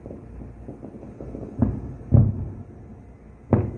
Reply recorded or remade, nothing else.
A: recorded